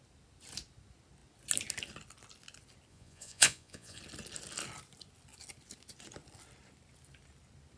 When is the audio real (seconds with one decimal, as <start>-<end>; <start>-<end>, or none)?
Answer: 0.0-2.9; 4.0-7.8